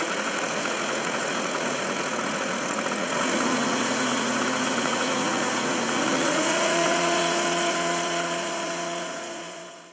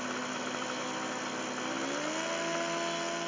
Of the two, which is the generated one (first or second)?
first